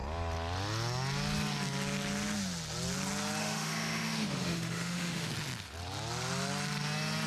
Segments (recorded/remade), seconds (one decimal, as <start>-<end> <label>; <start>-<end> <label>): 0.0-3.4 recorded; 3.4-5.3 remade; 5.3-7.3 recorded